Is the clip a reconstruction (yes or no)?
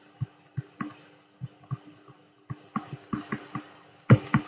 no